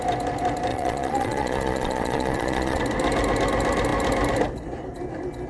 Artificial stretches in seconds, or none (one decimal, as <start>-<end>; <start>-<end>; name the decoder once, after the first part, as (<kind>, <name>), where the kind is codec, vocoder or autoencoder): 0.7-2.8 (vocoder, Vocos)